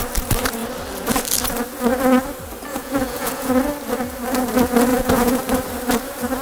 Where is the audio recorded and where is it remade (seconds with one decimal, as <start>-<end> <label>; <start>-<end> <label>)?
0.0-2.7 recorded; 2.7-3.5 remade; 3.5-4.9 recorded; 4.9-5.4 remade; 5.4-6.4 recorded